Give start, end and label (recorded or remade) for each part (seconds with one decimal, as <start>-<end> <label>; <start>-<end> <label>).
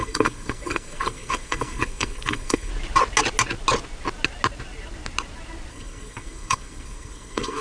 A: 0.0-2.7 remade; 2.7-5.7 recorded; 5.7-7.6 remade